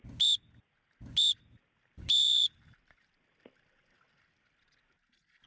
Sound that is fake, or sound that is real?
real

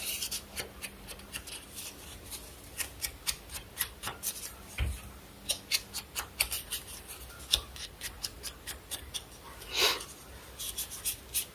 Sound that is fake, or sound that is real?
real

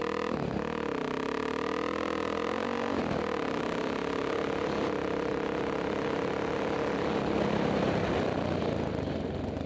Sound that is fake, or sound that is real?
real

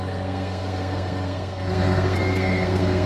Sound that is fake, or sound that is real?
fake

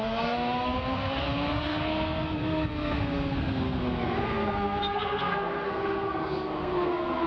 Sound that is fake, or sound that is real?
fake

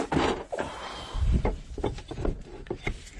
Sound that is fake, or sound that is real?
real